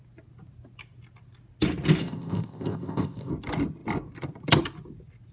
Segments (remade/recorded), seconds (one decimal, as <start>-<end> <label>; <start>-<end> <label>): 0.0-2.0 recorded; 2.0-3.3 remade; 3.3-5.3 recorded